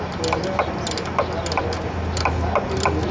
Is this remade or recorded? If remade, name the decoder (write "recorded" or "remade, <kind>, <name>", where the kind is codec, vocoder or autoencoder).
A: recorded